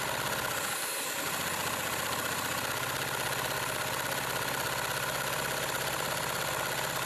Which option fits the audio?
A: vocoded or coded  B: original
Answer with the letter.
B